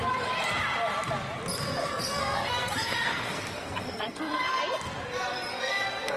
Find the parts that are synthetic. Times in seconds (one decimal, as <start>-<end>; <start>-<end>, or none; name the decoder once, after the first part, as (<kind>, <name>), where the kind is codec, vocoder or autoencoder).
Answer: 1.8-4.6 (codec, SNAC); 5.5-6.2